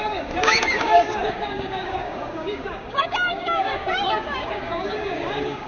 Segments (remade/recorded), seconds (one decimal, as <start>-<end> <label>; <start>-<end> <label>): 0.0-5.7 remade